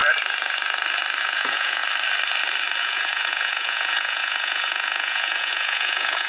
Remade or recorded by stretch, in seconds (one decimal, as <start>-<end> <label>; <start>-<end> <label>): 0.0-1.2 recorded; 1.2-1.8 remade; 1.8-2.8 recorded; 2.8-6.3 remade

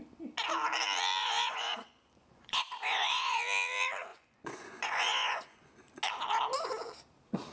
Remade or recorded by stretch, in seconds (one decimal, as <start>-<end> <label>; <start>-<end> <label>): 0.0-1.2 recorded; 1.2-3.4 remade; 3.4-4.1 recorded; 4.1-5.7 remade; 5.7-7.5 recorded

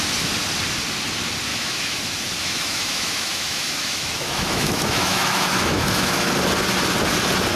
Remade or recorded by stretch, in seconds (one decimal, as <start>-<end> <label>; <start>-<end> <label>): 0.0-1.5 recorded; 1.5-2.0 remade; 2.0-2.4 recorded; 2.4-6.3 remade; 6.3-7.6 recorded